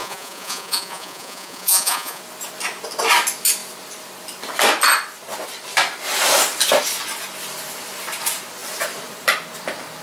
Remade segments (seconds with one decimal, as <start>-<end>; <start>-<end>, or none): 0.0-2.2